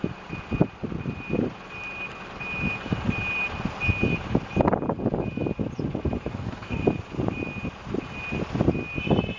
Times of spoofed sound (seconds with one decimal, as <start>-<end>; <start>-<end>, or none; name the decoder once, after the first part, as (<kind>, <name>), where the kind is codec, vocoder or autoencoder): 6.3-6.8 (codec, SNAC)